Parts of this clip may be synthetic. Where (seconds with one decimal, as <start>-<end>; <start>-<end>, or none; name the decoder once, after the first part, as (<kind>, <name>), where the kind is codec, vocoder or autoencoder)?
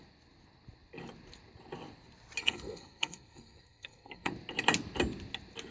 2.4-4.3 (codec, SNAC)